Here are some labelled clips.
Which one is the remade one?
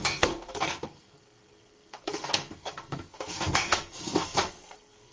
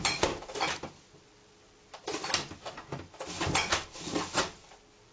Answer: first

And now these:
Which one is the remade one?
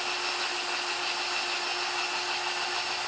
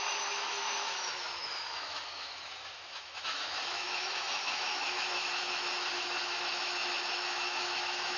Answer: second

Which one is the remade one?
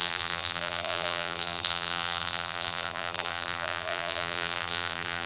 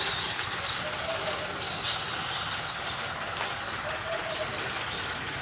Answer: first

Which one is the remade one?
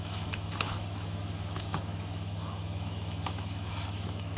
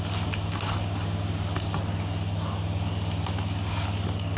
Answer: first